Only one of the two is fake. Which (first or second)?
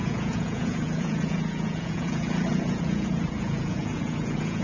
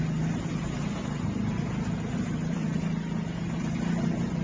first